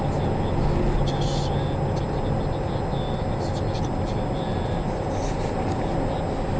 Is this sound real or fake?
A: real